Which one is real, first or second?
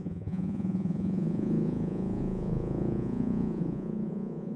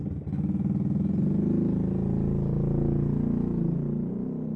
second